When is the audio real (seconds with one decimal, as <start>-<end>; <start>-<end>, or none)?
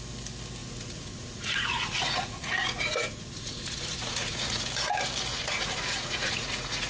0.0-0.6; 4.7-5.3